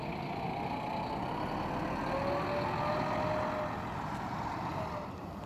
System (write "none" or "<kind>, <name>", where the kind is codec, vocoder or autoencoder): none